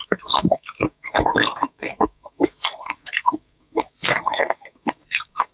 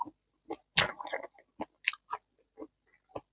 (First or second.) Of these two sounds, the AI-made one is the first